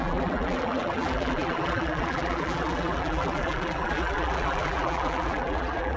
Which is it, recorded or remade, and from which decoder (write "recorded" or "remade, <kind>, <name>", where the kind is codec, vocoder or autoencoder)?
remade, vocoder, BigVGAN v2